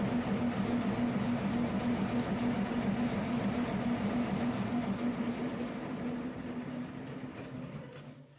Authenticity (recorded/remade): recorded